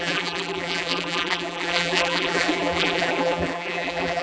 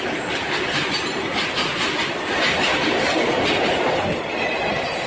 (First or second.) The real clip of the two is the second